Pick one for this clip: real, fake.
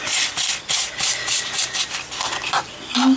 real